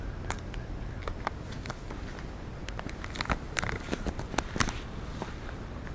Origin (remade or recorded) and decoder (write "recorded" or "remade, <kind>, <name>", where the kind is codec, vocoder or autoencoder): recorded